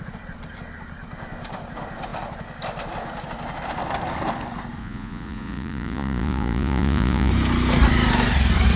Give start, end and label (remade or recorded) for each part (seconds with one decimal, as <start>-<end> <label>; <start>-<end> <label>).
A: 0.0-4.8 recorded; 4.8-7.3 remade; 7.3-8.8 recorded